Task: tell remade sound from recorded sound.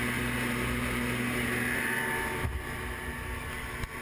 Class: recorded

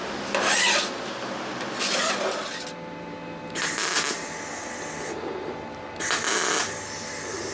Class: recorded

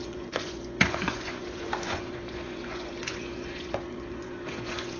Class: remade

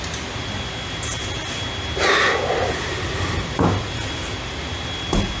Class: recorded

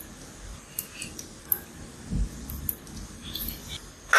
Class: recorded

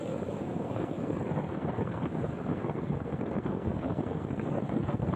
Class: remade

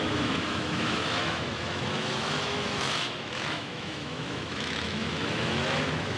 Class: remade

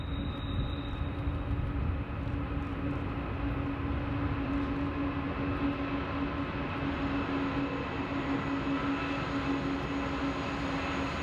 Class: recorded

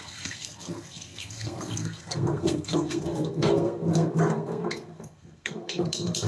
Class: remade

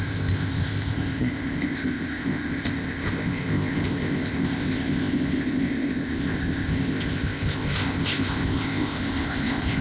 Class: remade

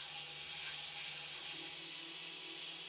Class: recorded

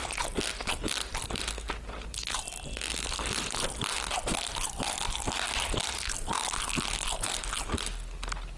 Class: recorded